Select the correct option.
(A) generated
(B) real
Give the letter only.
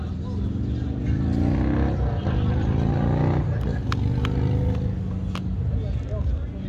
B